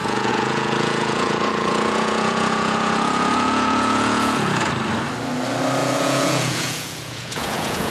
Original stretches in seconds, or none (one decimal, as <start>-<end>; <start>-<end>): 4.7-5.8